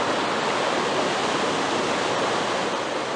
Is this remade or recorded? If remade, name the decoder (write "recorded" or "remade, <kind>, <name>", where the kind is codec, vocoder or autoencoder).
recorded